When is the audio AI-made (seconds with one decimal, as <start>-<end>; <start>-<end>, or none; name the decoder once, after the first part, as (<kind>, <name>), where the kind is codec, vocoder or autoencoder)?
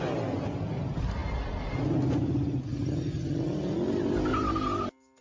none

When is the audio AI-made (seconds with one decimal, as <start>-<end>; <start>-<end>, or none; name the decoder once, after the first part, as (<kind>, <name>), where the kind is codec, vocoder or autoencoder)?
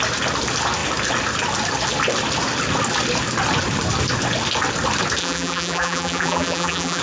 5.2-7.0 (vocoder, BigVGAN v2)